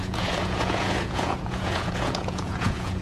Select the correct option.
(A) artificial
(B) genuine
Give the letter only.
A